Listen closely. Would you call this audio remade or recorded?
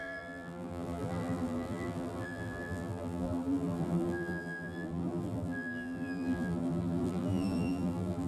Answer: remade